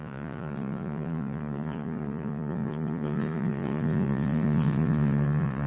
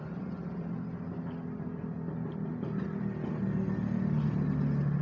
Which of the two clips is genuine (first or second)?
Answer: second